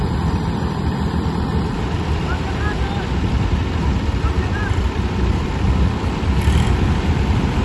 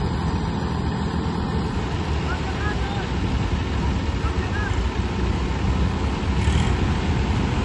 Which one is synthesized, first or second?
first